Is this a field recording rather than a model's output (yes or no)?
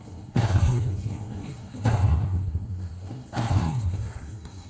no